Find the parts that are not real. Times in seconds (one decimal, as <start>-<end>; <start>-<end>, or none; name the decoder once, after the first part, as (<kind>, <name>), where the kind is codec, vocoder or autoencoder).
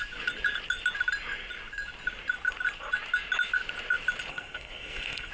4.3-5.3 (codec, SNAC)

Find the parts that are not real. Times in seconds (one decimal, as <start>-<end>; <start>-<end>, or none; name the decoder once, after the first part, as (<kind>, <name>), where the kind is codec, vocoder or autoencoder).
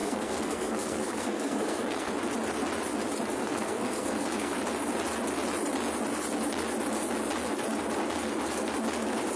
0.0-2.1 (codec, SNAC); 3.4-4.5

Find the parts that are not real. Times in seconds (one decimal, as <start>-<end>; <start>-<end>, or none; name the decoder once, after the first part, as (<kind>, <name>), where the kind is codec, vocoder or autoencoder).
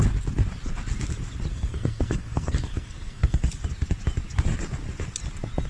1.5-3.4 (codec, SNAC)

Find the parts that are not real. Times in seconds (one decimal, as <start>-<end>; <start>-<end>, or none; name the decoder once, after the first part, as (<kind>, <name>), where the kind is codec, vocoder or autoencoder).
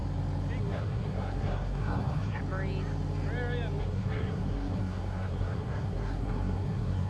0.6-2.4 (codec, SNAC); 3.8-7.1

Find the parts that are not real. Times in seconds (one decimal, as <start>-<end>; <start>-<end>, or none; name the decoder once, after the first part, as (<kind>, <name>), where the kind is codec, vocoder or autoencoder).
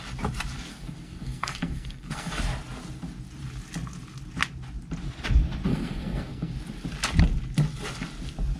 0.7-2.4 (codec, SNAC); 5.7-6.5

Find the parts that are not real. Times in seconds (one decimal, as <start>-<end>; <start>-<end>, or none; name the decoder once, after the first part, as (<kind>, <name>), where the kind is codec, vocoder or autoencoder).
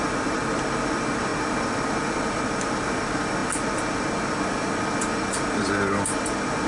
none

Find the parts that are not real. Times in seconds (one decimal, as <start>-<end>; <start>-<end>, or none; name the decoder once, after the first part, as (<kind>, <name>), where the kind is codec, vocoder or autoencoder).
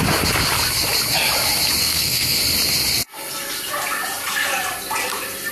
1.8-2.4 (codec, SNAC)